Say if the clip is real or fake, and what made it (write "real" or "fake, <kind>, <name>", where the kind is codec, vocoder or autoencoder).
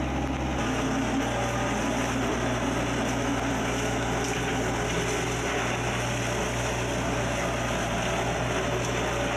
real